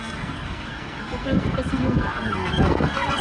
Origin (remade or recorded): remade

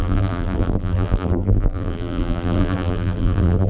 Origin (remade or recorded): remade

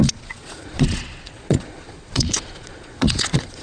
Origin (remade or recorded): remade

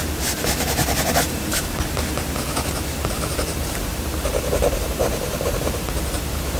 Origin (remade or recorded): remade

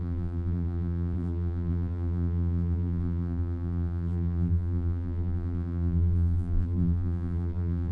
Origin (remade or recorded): remade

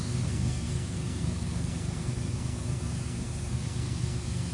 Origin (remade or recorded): remade